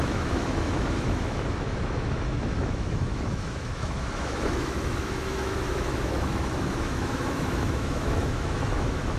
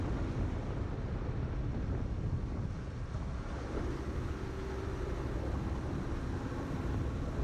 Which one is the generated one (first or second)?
first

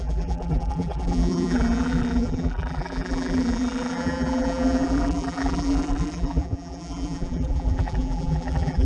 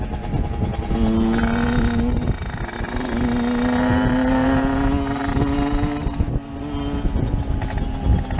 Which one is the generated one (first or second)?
first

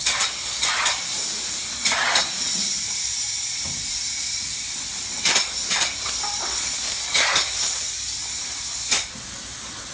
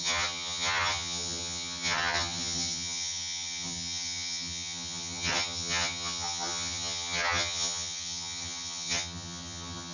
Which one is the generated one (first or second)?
second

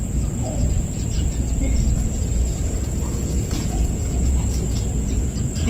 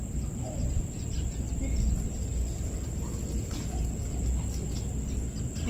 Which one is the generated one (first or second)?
first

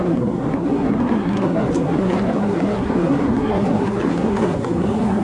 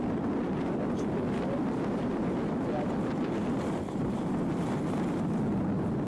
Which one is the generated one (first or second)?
first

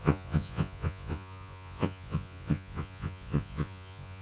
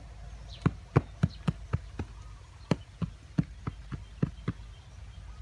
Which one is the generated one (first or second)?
first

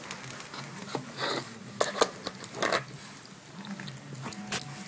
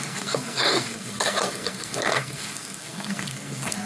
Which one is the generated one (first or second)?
second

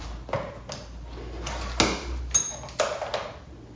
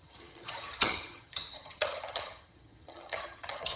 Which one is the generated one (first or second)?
second